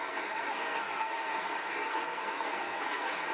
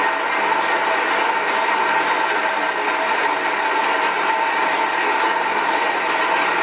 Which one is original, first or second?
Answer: second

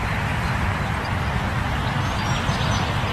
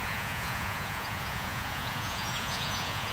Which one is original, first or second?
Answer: first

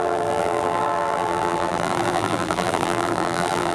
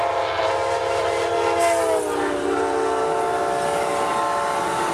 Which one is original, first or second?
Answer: second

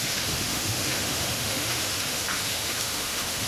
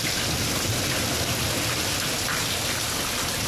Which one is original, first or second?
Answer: second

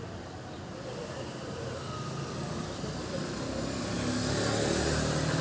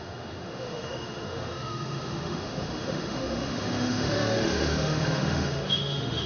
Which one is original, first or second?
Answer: first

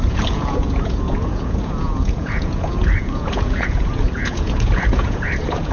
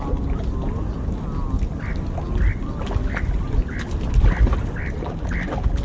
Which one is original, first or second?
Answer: second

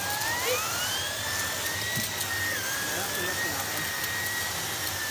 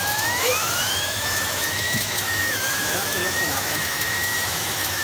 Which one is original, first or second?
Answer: first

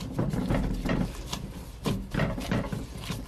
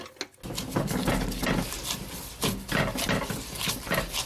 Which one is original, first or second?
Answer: second